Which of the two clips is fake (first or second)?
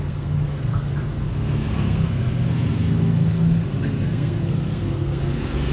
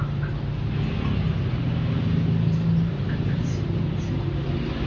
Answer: first